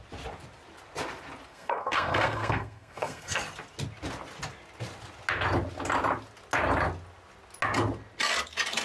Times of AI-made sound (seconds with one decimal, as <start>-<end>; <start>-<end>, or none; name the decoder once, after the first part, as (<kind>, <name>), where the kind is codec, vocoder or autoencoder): 1.5-3.4 (codec, SNAC)